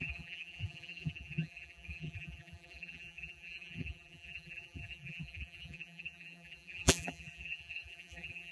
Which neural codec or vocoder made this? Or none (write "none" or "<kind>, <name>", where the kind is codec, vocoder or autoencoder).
vocoder, BigVGAN v2